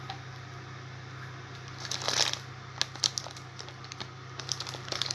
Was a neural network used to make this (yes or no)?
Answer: no